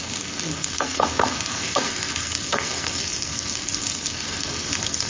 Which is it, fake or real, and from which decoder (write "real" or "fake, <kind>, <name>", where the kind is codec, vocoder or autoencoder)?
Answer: fake, codec, SNAC